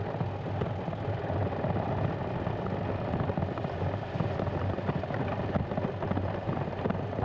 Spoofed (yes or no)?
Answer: no